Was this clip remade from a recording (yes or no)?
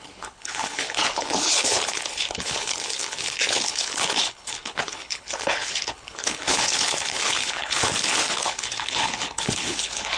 yes